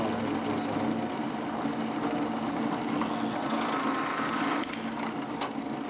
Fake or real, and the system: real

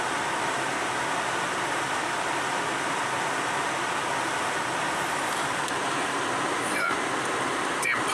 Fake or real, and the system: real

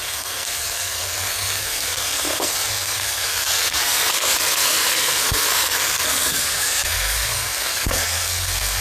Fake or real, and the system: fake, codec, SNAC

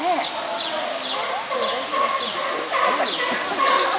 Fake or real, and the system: real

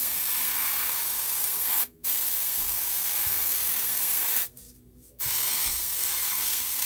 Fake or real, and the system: fake, codec, SNAC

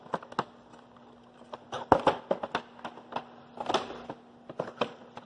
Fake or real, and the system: real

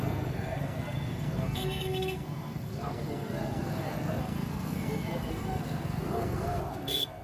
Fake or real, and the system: fake, codec, SNAC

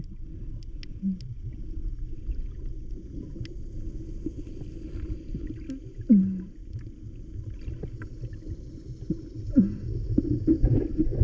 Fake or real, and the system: real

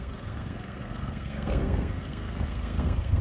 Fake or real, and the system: fake, codec, SNAC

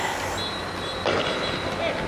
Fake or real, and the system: real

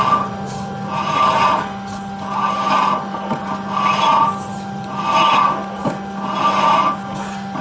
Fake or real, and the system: real